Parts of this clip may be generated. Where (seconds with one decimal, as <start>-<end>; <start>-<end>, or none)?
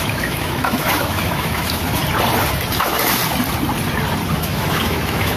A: 0.0-2.0; 2.8-3.2; 4.3-5.4